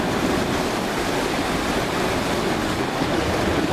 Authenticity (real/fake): real